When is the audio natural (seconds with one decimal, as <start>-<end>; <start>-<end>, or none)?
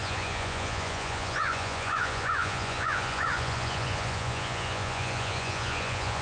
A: none